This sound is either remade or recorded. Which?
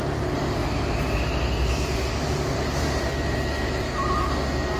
recorded